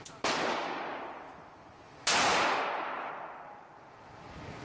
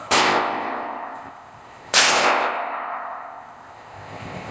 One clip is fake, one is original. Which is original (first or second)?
first